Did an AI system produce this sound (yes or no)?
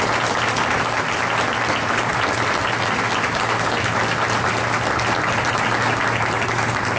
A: no